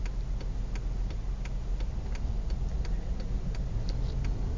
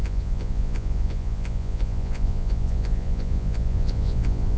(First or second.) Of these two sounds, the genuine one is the first